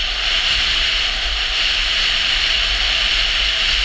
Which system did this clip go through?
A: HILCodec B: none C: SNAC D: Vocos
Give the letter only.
B